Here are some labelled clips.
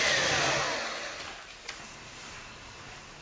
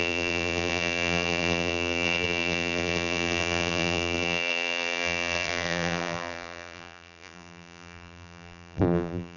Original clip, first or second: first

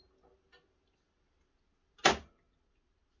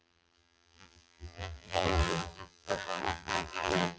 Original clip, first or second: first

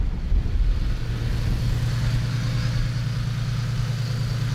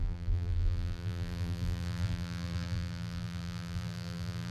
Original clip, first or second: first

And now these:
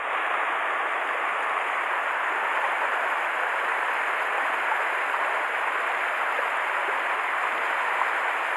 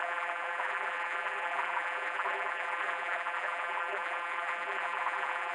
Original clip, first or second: first